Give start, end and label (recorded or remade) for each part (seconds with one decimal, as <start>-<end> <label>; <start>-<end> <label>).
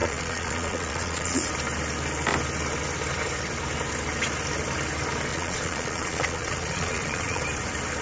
0.0-1.5 remade; 1.5-5.3 recorded; 5.3-7.4 remade; 7.4-8.0 recorded